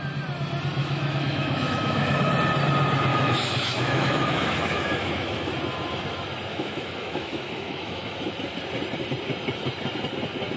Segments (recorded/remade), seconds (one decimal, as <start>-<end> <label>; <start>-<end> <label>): 0.0-0.8 recorded; 0.8-2.2 remade; 2.2-3.1 recorded; 3.1-5.5 remade; 5.5-6.5 recorded; 6.5-8.2 remade; 8.2-10.6 recorded